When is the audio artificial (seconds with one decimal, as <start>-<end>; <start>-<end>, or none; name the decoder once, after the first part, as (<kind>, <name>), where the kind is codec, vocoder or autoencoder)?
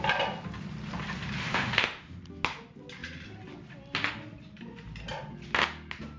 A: 1.4-2.2 (autoencoder, DAC-VAE)